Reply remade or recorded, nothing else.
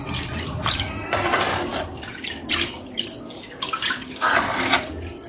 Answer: recorded